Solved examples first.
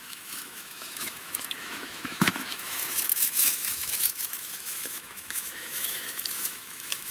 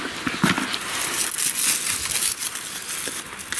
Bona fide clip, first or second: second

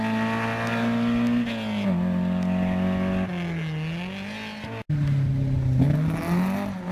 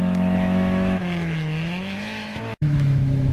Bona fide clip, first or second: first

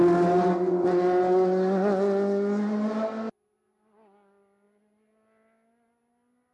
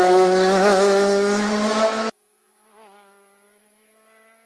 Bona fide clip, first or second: first